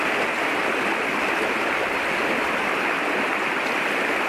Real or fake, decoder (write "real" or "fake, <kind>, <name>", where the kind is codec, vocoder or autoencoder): real